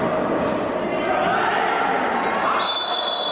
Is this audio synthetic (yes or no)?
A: no